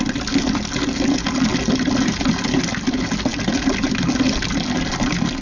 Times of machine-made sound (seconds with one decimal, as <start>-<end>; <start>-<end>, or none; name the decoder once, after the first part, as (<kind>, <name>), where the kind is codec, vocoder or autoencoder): none